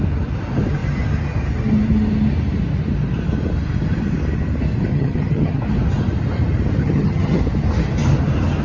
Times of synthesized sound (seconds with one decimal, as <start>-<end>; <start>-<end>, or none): 4.9-5.6; 6.8-7.4